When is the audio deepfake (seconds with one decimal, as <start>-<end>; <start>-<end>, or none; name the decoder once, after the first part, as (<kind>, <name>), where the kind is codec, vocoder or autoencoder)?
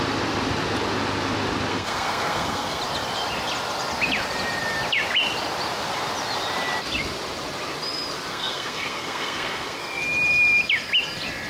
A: 1.7-2.8 (codec, SNAC); 8.3-10.0